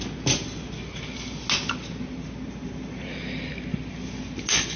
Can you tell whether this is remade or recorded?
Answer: recorded